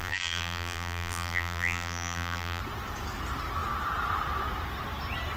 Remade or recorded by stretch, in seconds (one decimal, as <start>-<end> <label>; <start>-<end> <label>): 0.0-2.6 remade; 2.6-5.4 recorded